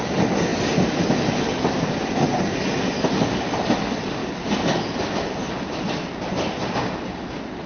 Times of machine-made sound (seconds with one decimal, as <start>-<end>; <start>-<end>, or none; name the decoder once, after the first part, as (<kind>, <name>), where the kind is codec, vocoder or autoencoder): none

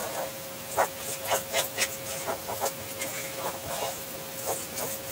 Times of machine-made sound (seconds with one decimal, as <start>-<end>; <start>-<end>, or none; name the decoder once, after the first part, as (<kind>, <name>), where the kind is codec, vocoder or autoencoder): 3.2-4.1 (autoencoder, DAC-VAE)

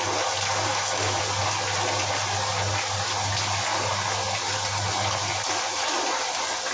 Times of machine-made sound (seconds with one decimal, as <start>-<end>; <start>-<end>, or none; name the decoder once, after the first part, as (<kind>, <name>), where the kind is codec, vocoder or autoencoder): 0.7-1.2 (autoencoder, DAC-VAE)

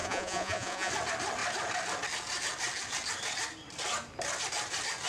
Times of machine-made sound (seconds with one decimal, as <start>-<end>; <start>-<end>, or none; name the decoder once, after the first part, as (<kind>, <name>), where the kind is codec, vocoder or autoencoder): 0.0-0.9 (vocoder, Vocos)

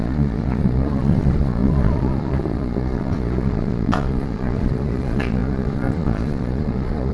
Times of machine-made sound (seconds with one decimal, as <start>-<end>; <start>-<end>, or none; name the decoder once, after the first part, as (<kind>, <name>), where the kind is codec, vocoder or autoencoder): 0.0-7.1 (vocoder, Vocos)

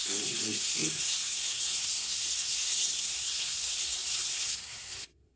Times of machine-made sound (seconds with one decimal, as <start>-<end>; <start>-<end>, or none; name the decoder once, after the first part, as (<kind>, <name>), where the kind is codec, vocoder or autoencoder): 0.0-5.4 (codec, SNAC)